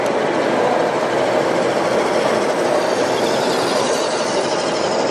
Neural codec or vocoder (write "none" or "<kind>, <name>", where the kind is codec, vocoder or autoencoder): vocoder, BigVGAN v2